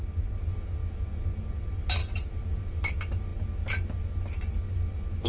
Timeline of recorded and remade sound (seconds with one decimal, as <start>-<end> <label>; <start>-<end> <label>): 0.0-2.0 recorded; 2.0-2.9 remade; 2.9-5.3 recorded